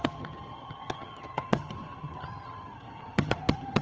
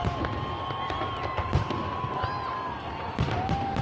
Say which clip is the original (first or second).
second